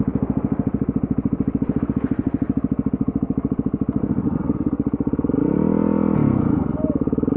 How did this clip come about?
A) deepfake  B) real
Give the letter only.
B